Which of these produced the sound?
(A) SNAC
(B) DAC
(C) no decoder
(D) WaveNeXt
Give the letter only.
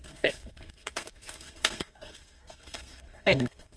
A